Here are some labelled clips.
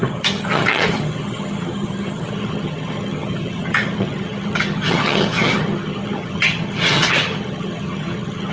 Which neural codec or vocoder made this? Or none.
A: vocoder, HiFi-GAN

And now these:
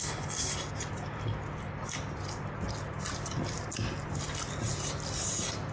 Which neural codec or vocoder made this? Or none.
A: none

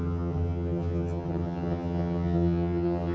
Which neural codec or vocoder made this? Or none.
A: vocoder, HiFi-GAN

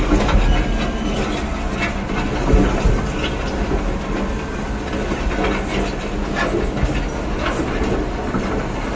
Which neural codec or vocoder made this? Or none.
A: none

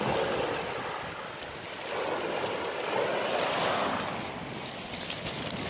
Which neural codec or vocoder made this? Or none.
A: none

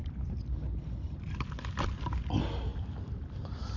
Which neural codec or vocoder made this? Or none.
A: none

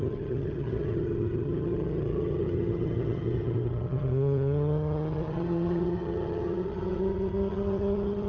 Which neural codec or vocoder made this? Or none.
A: vocoder, HiFi-GAN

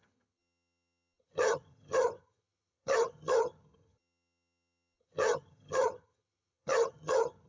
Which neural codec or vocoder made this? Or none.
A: vocoder, HiFi-GAN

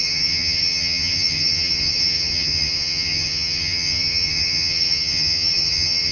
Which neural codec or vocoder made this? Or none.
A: vocoder, HiFi-GAN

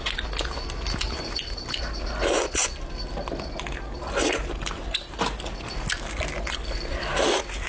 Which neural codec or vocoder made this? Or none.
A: none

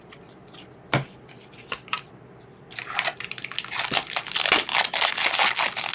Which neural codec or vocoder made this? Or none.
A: none